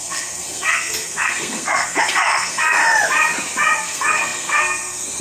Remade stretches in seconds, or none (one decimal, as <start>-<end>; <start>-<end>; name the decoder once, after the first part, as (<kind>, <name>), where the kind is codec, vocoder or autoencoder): 0.0-2.8 (codec, SNAC); 3.8-5.2